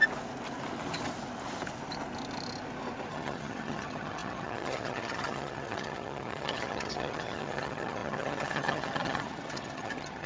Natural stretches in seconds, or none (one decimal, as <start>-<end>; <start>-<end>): 0.0-3.1

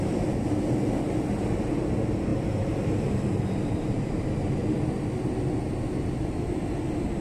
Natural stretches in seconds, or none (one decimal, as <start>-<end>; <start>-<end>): 0.0-2.3; 4.5-7.2

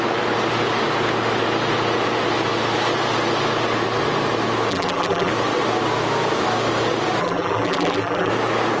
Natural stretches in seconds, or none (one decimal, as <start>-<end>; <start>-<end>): 0.0-4.7; 5.3-7.2; 8.3-8.8

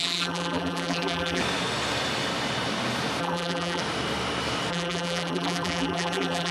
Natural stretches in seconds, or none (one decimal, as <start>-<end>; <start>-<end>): 1.4-3.2; 3.8-4.7

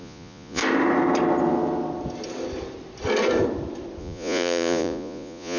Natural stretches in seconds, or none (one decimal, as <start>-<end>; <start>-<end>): 0.6-4.0